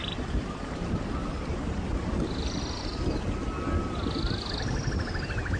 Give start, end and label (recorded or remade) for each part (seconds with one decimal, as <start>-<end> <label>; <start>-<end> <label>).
0.0-1.3 remade; 1.3-5.6 recorded